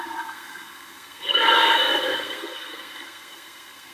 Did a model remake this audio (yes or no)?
yes